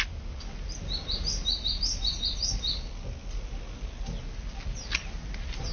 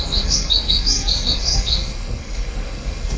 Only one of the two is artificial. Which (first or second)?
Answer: second